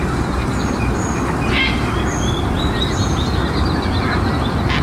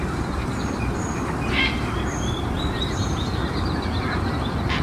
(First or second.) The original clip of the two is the first